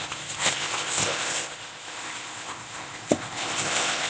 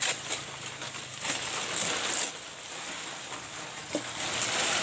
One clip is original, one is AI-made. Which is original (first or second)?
second